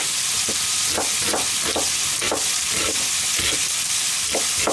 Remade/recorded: recorded